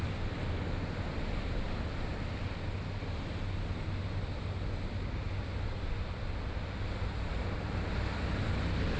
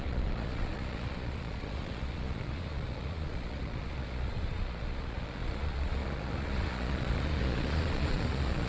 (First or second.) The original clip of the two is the first